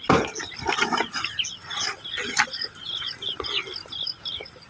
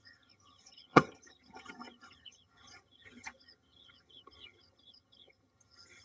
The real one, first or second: first